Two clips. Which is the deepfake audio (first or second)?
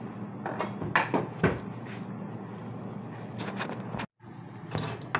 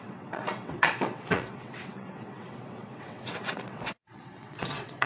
second